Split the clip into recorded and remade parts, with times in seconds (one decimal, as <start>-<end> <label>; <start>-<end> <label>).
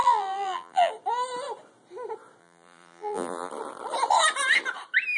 0.0-0.9 remade; 0.9-2.4 recorded; 2.4-3.5 remade; 3.5-5.2 recorded